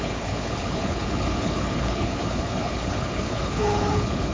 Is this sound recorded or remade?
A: remade